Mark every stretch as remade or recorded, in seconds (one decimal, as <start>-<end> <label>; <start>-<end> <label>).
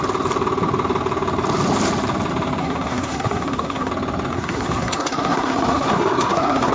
0.0-2.6 recorded; 2.6-3.9 remade; 3.9-4.3 recorded; 4.3-6.7 remade